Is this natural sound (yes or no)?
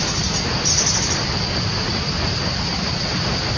yes